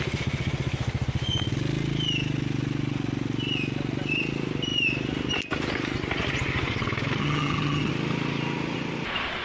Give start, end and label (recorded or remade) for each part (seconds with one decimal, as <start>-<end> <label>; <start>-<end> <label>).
0.0-7.2 recorded; 7.2-7.9 remade; 7.9-9.4 recorded